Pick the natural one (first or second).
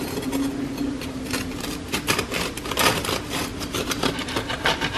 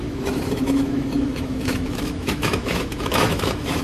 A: first